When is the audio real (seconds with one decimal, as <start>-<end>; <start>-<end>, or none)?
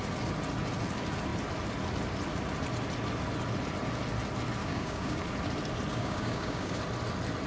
0.0-4.6; 5.2-5.9; 6.8-7.5